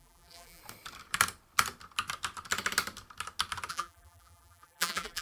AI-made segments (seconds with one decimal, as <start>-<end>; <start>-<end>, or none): 0.0-0.6; 3.7-5.2